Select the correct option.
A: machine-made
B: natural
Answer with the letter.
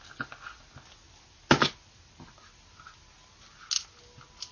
B